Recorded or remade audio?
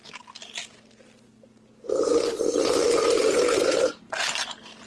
recorded